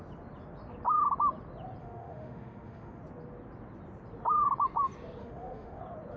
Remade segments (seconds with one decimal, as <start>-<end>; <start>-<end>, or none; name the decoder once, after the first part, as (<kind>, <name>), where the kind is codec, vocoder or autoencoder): 1.8-3.0 (autoencoder, DAC-VAE); 5.2-5.8